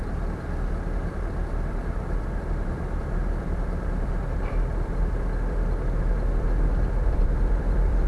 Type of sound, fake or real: fake